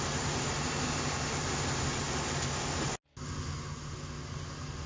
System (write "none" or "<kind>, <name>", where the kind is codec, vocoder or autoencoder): none